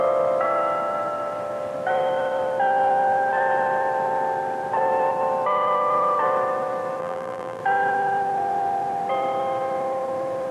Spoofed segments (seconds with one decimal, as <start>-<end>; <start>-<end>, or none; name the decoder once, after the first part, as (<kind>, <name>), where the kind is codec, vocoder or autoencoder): 7.0-7.6 (vocoder, BigVGAN v2)